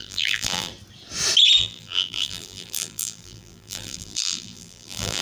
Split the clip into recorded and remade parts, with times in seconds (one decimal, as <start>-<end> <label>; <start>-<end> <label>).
0.0-0.7 remade; 0.7-1.6 recorded; 1.6-5.2 remade